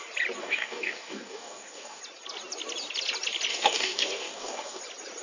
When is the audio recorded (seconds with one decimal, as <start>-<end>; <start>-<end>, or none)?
0.0-0.4; 2.0-3.5; 4.8-5.2